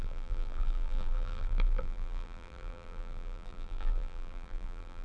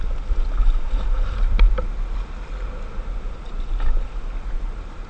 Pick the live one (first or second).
second